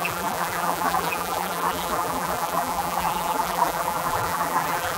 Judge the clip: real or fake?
fake